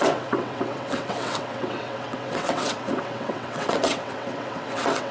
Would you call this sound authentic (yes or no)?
no